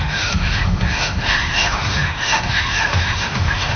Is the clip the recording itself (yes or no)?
no